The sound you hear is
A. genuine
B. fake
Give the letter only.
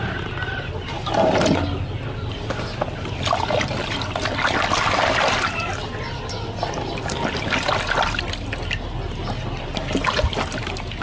A